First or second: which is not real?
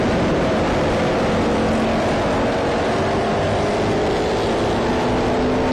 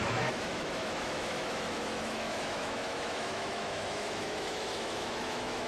second